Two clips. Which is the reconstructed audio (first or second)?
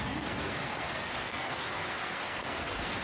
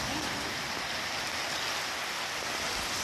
first